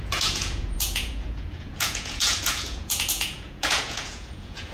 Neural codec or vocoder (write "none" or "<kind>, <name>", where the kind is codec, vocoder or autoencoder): vocoder, Vocos